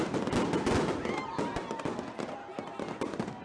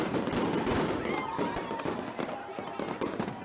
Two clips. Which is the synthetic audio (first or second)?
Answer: second